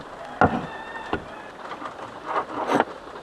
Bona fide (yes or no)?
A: yes